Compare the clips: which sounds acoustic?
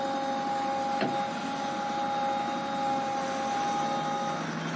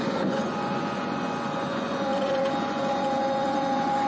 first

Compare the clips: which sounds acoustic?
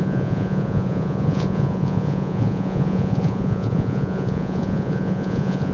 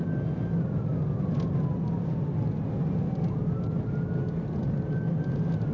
second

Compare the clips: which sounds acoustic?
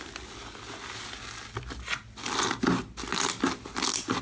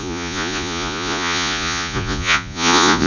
first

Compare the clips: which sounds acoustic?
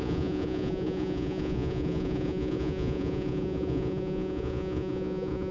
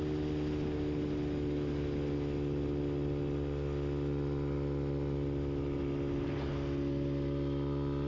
second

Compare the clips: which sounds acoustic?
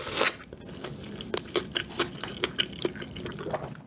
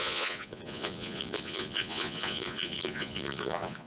first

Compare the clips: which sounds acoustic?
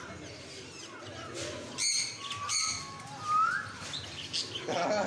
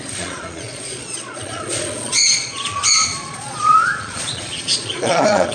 first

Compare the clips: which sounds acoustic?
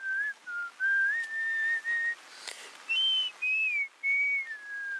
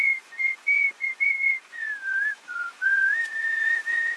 first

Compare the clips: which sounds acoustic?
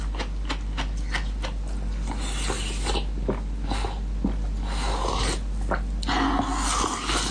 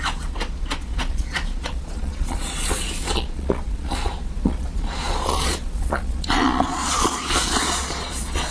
first